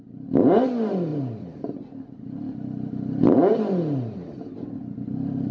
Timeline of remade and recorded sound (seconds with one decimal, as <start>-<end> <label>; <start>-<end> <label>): 0.0-5.5 recorded